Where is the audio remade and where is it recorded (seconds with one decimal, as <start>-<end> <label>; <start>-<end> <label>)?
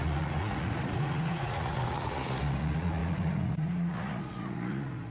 0.0-5.1 remade